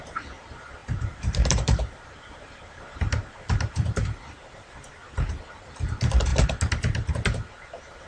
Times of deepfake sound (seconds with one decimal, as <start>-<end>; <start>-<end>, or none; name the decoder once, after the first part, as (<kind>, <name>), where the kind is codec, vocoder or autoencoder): 0.0-5.0 (vocoder, BigVGAN v2); 5.7-6.3; 7.1-8.1